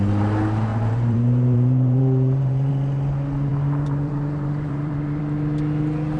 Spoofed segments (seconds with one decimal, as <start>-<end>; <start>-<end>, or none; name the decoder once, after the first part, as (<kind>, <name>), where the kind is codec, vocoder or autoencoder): 0.7-2.7 (vocoder, BigVGAN v2); 3.5-5.2